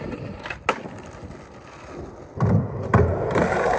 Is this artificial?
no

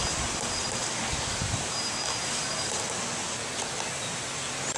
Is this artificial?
no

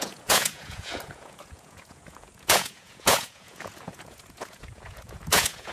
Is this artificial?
yes